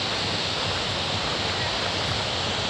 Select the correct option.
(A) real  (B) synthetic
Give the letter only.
A